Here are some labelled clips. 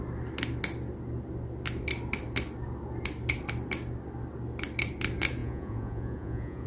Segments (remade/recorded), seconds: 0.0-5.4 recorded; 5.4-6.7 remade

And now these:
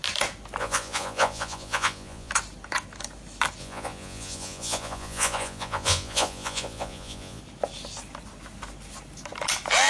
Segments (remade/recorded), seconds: 0.0-0.6 recorded; 0.6-2.3 remade; 2.3-3.6 recorded; 3.6-7.4 remade; 7.4-9.9 recorded

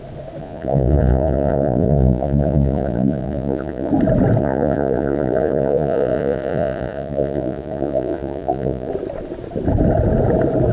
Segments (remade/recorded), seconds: 0.0-0.4 recorded; 0.4-3.9 remade; 3.9-4.4 recorded; 4.4-8.9 remade; 8.9-10.7 recorded

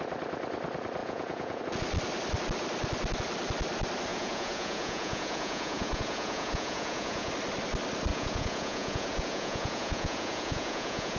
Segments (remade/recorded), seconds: 0.0-1.0 recorded; 1.0-1.6 remade; 1.6-4.1 recorded; 4.1-7.3 remade; 7.3-8.1 recorded; 8.1-11.2 remade

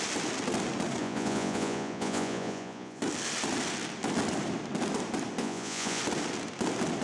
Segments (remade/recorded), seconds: 0.0-1.0 recorded; 1.0-3.0 remade; 3.0-5.4 recorded; 5.4-6.0 remade; 6.0-7.0 recorded

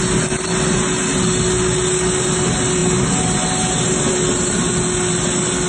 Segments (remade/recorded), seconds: 0.0-5.7 recorded

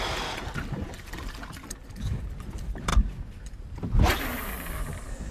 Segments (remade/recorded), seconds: 0.0-5.3 recorded